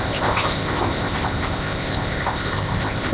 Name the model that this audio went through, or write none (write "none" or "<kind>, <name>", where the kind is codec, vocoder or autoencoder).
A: codec, ZipCodec